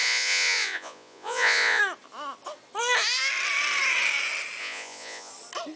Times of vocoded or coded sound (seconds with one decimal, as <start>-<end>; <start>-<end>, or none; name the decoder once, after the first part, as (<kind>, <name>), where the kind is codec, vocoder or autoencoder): 0.0-1.8 (vocoder, Vocos); 4.6-5.3

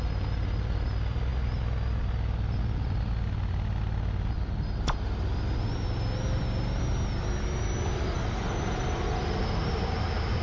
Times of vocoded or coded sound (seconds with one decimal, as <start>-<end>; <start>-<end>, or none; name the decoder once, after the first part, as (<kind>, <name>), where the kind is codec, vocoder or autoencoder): none

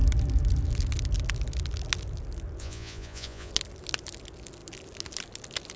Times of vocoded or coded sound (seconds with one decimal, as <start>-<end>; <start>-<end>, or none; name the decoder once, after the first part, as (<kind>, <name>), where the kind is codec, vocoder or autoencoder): 2.6-3.5 (vocoder, Vocos)

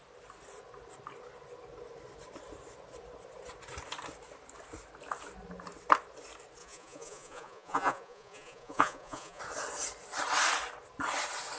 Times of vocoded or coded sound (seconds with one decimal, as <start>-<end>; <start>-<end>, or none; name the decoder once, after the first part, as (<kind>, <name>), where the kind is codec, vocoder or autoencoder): 6.6-9.4 (vocoder, Vocos)

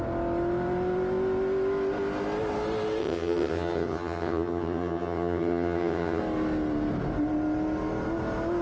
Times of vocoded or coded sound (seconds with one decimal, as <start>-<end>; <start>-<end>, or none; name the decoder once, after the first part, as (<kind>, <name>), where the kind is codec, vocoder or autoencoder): 3.0-6.2 (vocoder, HiFi-GAN)

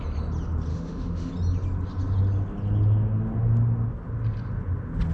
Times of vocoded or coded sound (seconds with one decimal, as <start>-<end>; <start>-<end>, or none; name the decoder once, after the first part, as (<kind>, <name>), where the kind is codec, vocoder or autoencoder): 0.7-1.3 (autoencoder, DAC-VAE)

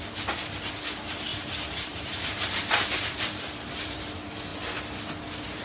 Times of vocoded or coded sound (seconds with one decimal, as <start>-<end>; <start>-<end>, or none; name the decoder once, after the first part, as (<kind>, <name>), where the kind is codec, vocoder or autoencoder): 1.3-4.1 (vocoder, BigVGAN v2)